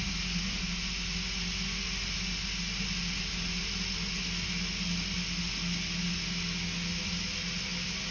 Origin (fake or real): real